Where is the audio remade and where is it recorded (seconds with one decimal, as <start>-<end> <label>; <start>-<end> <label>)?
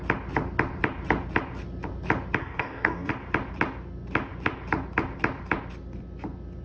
0.0-2.4 recorded; 2.4-3.1 remade; 3.1-6.6 recorded